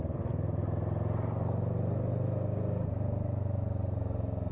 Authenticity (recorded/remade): recorded